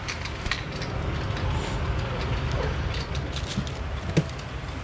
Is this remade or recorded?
recorded